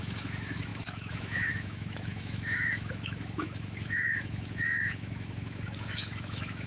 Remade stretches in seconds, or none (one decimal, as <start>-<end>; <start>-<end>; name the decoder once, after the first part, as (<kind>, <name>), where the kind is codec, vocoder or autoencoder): 0.0-6.7 (autoencoder, DAC-VAE)